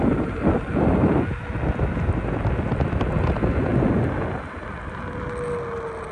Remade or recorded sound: recorded